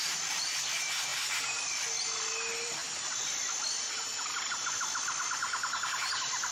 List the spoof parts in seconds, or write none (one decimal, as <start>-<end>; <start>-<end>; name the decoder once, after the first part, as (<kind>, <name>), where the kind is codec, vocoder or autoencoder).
0.0-2.8 (vocoder, BigVGAN v2); 5.2-6.5